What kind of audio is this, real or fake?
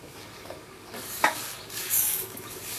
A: fake